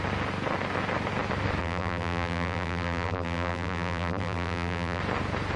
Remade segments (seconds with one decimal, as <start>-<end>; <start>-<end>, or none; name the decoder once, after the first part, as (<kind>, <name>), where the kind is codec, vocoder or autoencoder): 1.6-5.0 (vocoder, BigVGAN v2)